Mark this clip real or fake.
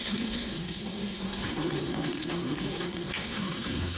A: fake